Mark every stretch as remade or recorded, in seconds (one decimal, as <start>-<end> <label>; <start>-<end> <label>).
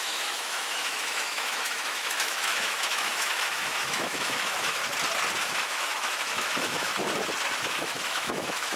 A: 0.0-4.8 remade; 4.8-5.4 recorded; 5.4-6.9 remade; 6.9-7.6 recorded; 7.6-8.8 remade